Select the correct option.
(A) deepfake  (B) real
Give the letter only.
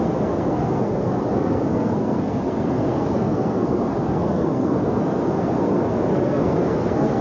A